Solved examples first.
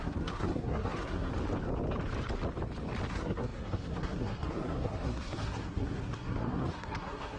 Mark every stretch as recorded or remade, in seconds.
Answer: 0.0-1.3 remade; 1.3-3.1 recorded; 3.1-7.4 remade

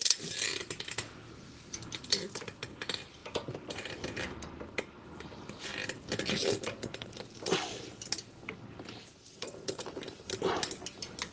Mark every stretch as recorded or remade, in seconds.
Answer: 0.0-11.3 recorded

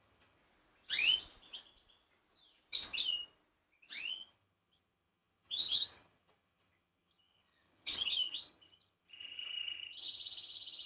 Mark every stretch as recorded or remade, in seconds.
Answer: 0.0-0.4 remade; 0.4-4.1 recorded; 4.1-10.9 remade